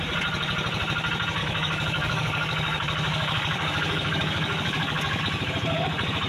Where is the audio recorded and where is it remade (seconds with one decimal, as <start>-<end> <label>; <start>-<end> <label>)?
0.0-1.4 recorded; 1.4-5.2 remade; 5.2-6.3 recorded